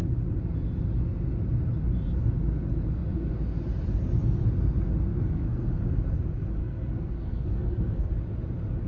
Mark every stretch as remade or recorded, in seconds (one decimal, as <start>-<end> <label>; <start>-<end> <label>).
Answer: 0.0-5.1 recorded; 5.1-5.9 remade; 5.9-6.6 recorded; 6.6-8.1 remade; 8.1-8.9 recorded